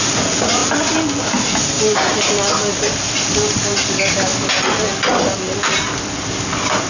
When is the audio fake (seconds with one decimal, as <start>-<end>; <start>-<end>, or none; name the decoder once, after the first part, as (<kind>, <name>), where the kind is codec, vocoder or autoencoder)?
none